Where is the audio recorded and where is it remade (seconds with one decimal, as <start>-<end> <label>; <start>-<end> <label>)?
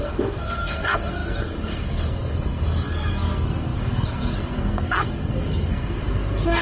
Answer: 0.0-6.6 remade